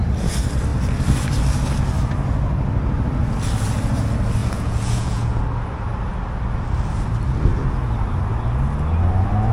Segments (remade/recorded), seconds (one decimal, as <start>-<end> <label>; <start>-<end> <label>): 0.0-4.4 recorded; 4.4-5.4 remade; 5.4-9.5 recorded